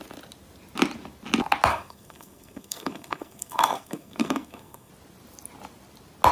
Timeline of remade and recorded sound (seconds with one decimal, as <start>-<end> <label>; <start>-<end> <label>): 0.0-1.7 recorded; 1.7-4.9 remade; 4.9-6.3 recorded